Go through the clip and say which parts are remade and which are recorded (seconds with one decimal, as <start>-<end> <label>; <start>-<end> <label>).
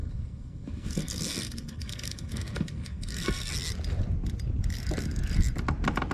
0.0-3.5 remade; 3.5-6.1 recorded